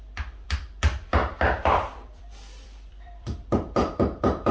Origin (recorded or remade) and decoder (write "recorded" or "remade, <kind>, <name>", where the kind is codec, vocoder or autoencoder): remade, vocoder, BigVGAN v2